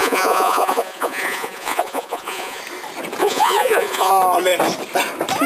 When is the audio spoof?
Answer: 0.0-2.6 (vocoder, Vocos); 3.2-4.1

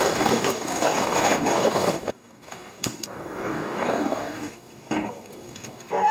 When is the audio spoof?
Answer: 0.0-6.1 (codec, DAC)